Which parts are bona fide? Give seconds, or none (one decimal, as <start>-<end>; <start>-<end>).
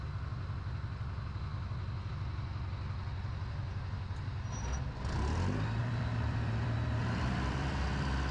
0.0-5.8; 7.7-8.3